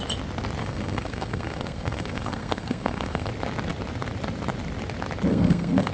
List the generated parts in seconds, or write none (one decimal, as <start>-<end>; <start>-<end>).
0.6-3.3; 5.3-5.9